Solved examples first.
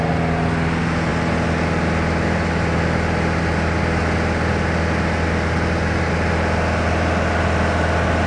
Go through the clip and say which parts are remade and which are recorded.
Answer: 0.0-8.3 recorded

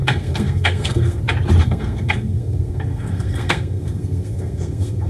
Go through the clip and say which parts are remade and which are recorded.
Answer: 0.0-1.2 remade; 1.2-1.6 recorded; 1.6-5.1 remade

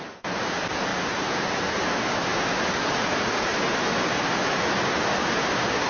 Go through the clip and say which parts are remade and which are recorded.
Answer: 0.0-5.9 recorded

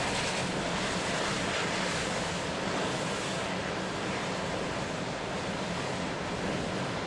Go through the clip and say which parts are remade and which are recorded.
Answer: 0.0-7.1 recorded

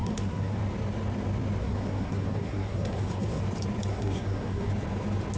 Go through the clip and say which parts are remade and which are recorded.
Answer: 0.0-0.6 remade; 0.6-1.6 recorded; 1.6-3.4 remade; 3.4-3.9 recorded; 3.9-4.7 remade; 4.7-5.4 recorded

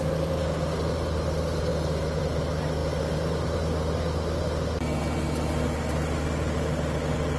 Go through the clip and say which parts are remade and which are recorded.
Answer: 0.0-7.4 recorded